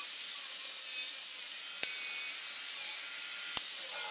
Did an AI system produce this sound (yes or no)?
no